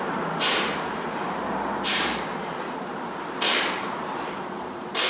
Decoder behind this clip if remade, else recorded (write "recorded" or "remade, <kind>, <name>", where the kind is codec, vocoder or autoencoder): remade, vocoder, BigVGAN v2